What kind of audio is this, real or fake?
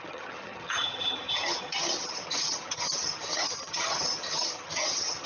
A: fake